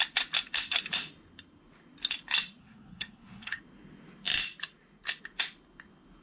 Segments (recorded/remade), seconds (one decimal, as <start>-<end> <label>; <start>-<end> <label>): 0.0-2.6 recorded; 2.6-3.6 remade; 3.6-6.2 recorded